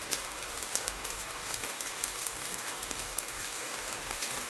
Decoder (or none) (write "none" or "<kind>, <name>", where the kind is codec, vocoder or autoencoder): codec, DAC